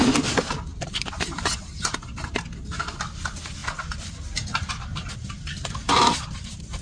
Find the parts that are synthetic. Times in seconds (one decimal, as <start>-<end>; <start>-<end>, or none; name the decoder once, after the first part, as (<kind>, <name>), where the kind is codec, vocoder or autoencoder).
0.7-2.3 (vocoder, BigVGAN v2); 3.6-6.8